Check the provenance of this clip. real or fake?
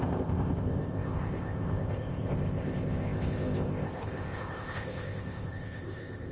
fake